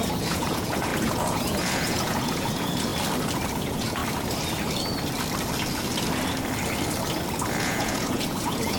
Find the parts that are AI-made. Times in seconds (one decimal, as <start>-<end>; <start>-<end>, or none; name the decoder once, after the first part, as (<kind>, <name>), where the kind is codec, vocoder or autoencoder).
0.0-2.9 (vocoder, Vocos); 3.6-4.0; 7.5-8.8